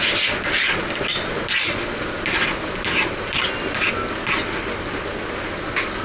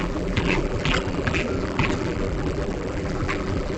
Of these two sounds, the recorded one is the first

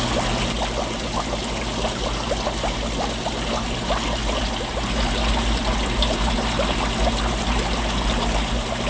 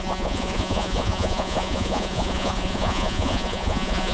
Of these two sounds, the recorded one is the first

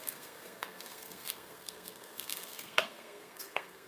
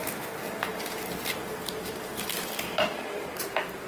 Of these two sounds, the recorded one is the second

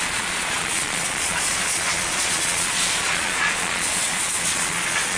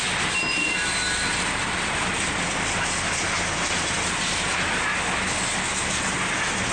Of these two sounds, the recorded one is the second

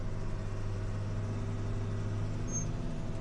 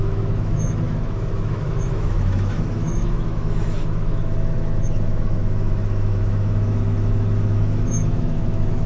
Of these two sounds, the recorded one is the first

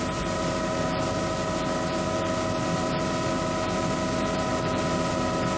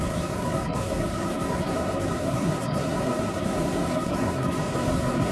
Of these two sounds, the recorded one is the first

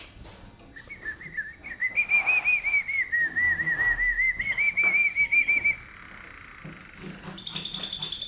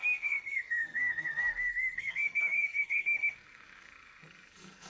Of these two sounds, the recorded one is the first